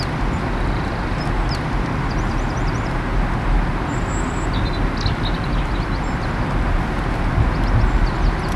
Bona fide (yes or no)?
yes